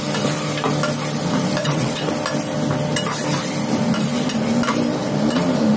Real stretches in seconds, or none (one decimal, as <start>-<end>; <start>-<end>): 0.0-1.6; 2.1-5.8